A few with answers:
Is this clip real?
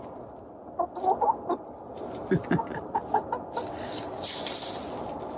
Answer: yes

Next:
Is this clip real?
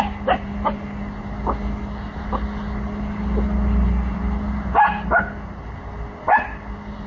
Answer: yes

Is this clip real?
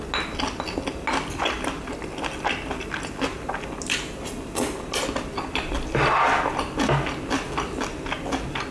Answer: yes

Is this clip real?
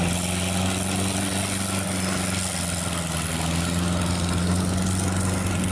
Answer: yes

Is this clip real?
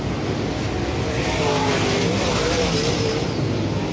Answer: yes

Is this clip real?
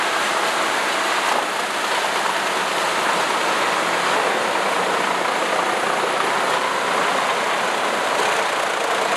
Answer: yes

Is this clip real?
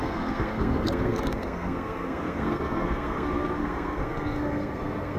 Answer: no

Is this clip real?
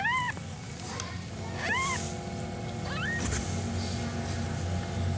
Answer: yes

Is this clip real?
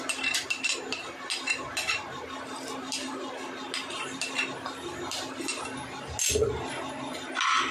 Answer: yes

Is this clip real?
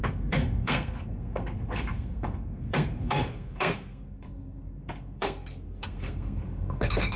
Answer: no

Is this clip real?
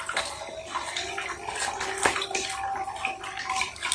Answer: yes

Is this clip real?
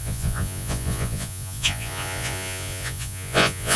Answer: no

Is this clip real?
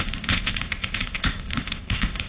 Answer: no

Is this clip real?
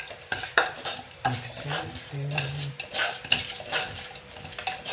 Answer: no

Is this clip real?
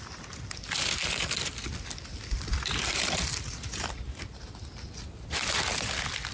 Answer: yes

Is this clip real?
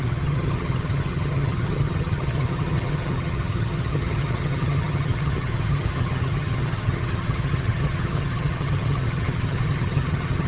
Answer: no